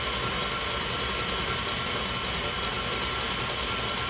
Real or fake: real